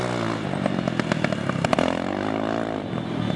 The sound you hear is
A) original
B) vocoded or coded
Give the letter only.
A